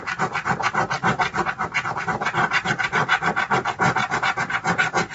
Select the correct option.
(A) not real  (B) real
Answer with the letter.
B